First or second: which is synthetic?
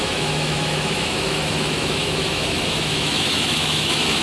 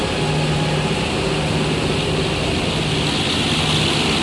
first